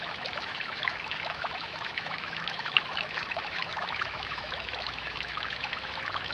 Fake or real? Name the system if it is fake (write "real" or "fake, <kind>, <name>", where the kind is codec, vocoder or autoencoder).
fake, autoencoder, DAC-VAE